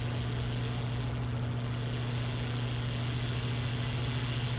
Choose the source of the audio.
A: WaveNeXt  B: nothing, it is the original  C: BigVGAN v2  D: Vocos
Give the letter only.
B